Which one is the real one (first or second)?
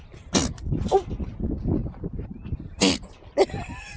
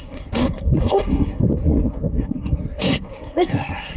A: first